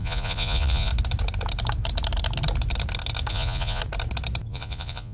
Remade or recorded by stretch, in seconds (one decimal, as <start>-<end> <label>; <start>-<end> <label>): 0.0-0.9 remade; 0.9-3.3 recorded; 3.3-3.8 remade; 3.8-4.5 recorded; 4.5-5.1 remade